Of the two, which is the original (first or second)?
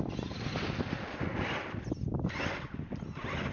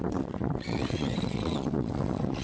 first